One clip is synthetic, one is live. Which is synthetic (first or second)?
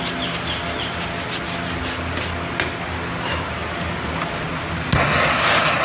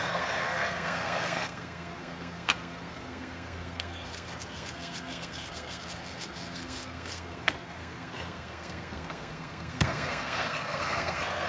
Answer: second